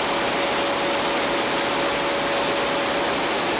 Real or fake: real